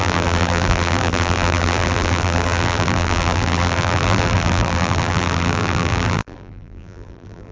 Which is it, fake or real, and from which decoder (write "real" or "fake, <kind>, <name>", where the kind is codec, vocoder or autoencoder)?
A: fake, vocoder, BigVGAN v2